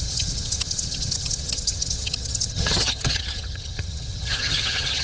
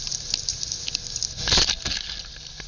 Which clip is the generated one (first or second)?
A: first